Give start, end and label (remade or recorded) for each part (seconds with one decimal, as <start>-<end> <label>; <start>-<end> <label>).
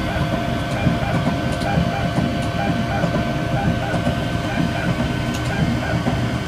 0.0-6.5 recorded